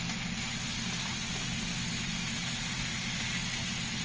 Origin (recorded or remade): recorded